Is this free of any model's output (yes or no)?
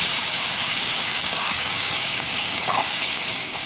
no